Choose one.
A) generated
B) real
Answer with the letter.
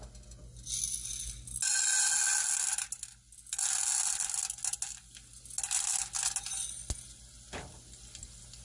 B